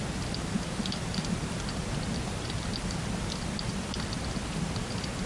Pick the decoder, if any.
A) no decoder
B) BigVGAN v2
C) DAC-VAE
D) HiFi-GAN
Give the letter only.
A